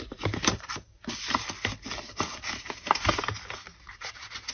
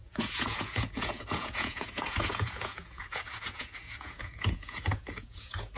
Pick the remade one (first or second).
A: second